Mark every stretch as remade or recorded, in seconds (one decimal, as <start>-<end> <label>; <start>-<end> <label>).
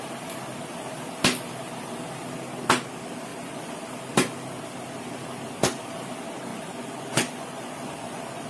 0.0-3.3 recorded; 3.3-3.8 remade; 3.8-6.5 recorded; 6.5-8.5 remade